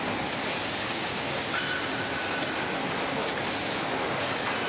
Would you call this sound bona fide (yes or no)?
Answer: yes